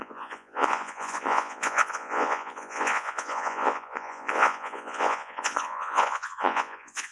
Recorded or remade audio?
remade